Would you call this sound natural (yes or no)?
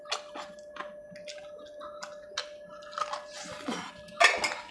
yes